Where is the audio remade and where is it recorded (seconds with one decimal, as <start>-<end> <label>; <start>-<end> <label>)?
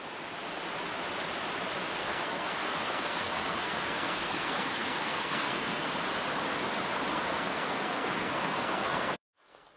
0.0-2.0 recorded; 2.0-5.9 remade; 5.9-7.1 recorded; 7.1-9.8 remade